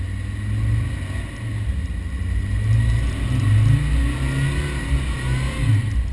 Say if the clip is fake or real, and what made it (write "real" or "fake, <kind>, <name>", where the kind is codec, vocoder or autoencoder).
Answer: real